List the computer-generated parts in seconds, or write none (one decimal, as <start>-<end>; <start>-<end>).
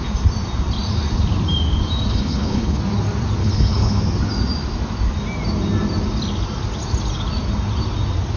2.1-2.8; 3.4-4.0